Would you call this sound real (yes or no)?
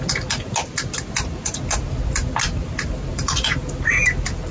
yes